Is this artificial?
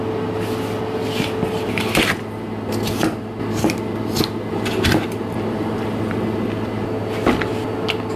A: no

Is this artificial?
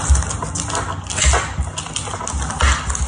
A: no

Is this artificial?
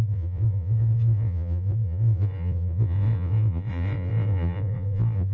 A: yes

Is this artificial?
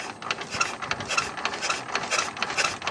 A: no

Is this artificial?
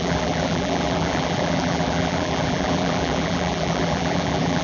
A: yes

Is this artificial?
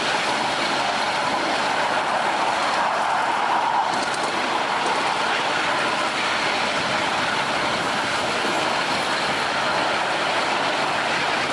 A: no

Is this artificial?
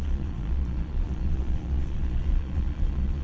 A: yes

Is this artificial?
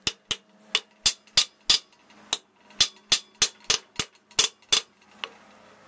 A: no